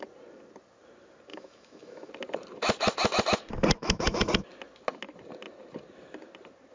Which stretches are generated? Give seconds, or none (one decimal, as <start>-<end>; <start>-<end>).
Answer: 1.3-2.1; 3.8-4.3